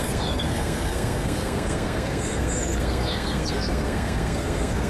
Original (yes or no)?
no